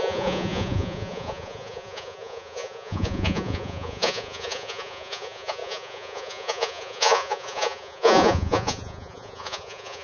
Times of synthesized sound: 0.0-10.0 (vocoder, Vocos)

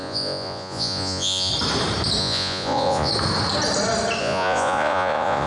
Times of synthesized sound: 0.0-1.5 (vocoder, Vocos); 2.2-3.1; 4.2-5.5

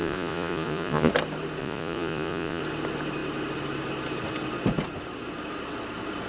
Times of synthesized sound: 0.0-1.1 (vocoder, Vocos); 1.6-2.6

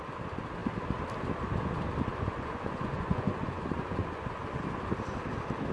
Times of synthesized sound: 2.1-4.3 (vocoder, Vocos)

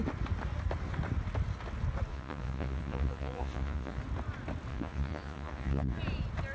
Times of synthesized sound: 2.1-4.0 (vocoder, Vocos); 4.7-6.0

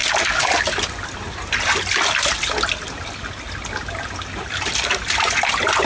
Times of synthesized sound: none

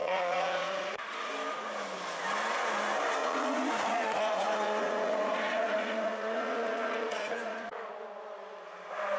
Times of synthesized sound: 0.0-1.3 (vocoder, Vocos); 3.2-7.9